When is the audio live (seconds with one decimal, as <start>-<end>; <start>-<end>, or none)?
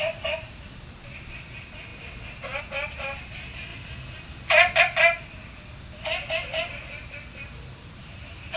0.0-8.6